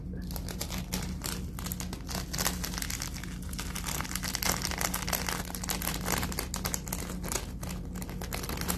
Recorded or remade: recorded